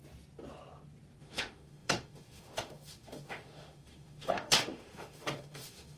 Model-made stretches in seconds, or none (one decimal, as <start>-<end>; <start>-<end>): 1.2-6.0